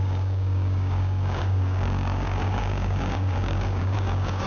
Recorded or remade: remade